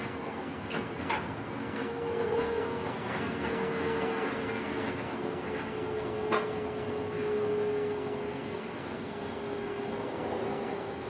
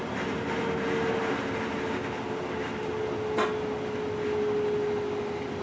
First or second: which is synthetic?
first